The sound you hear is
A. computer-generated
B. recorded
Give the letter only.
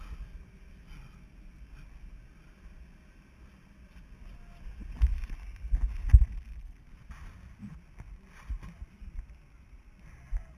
B